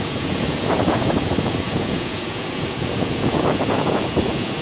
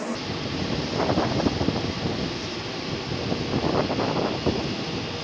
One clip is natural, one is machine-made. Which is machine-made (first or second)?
first